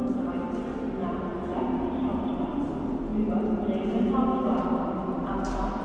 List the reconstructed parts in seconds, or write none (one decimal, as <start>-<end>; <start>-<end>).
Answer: none